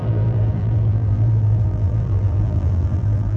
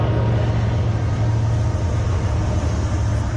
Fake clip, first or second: first